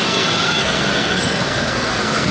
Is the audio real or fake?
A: fake